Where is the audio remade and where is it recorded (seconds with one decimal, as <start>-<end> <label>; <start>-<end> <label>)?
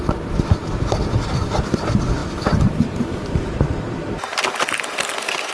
0.0-5.5 remade